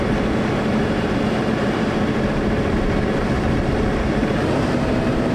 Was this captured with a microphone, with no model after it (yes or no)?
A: no